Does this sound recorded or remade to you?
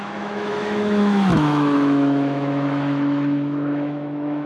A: remade